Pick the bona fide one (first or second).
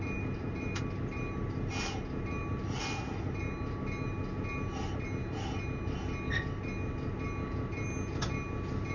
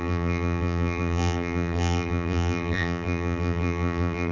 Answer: first